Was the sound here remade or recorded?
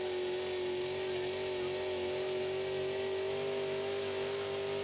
recorded